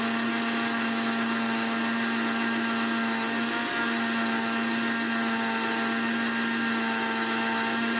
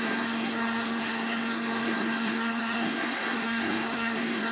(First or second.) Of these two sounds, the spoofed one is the second